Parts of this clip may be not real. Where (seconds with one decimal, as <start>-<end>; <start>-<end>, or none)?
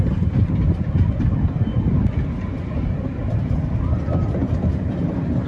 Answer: 1.7-3.8; 4.4-5.0